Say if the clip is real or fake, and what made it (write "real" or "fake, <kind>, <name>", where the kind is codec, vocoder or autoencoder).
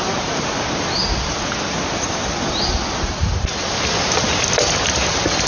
real